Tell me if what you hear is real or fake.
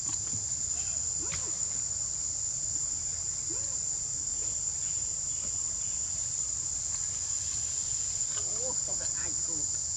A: real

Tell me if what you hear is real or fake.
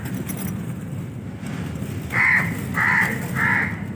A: real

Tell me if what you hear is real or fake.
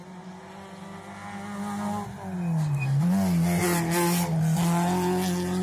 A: real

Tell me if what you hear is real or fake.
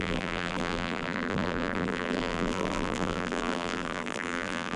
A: fake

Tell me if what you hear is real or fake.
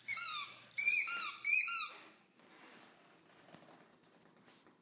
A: fake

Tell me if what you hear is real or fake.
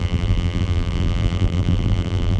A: fake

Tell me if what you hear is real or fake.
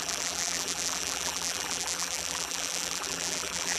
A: fake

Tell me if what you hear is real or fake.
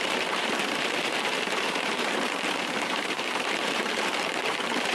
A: fake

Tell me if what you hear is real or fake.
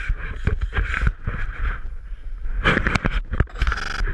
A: real